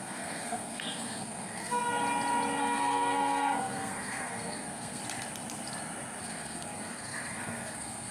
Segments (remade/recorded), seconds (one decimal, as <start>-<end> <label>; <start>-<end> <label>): 0.0-1.8 remade; 1.8-2.6 recorded; 2.6-5.0 remade; 5.0-6.2 recorded; 6.2-8.1 remade